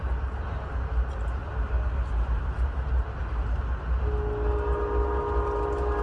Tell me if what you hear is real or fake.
real